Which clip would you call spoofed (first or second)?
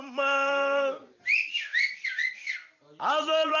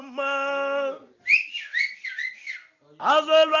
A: first